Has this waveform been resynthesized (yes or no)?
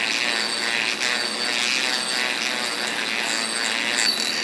no